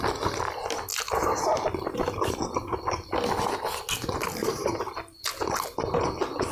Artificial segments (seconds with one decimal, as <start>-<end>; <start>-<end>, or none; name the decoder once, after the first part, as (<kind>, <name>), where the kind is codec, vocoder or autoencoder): none